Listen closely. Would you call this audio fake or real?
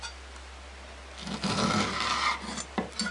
real